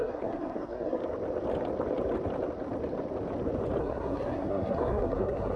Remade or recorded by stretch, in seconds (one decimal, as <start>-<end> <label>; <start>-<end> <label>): 0.0-1.0 remade; 1.0-3.8 recorded; 3.8-5.6 remade

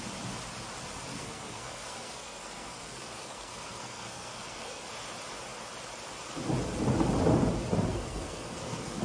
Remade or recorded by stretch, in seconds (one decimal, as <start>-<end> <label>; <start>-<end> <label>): 0.0-1.1 recorded; 1.1-4.8 remade; 4.8-7.9 recorded; 7.9-9.0 remade

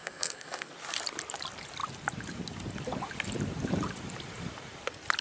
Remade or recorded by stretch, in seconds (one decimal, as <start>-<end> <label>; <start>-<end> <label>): 0.0-0.7 remade; 0.7-5.2 recorded